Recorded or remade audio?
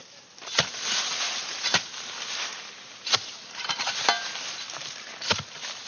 recorded